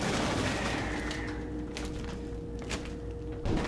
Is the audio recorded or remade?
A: recorded